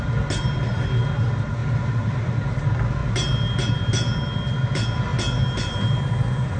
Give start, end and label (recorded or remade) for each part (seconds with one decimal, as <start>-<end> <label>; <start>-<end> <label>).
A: 0.0-6.6 recorded